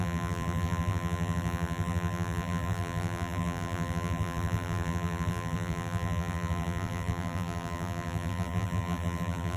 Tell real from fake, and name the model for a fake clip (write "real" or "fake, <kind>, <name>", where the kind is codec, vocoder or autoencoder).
fake, vocoder, BigVGAN v2